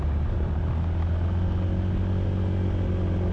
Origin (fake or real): real